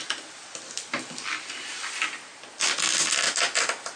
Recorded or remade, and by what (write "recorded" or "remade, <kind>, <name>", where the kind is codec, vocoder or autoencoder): recorded